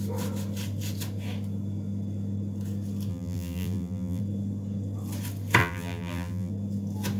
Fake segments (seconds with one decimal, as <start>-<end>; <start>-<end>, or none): 3.1-4.2; 5.6-6.5